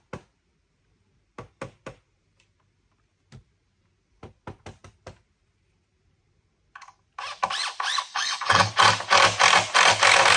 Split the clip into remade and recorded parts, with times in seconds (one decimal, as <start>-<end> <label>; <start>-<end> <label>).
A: 0.0-8.1 recorded; 8.1-8.7 remade; 8.7-10.4 recorded